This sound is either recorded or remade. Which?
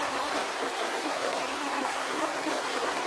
remade